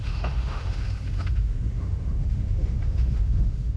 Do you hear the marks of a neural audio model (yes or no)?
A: yes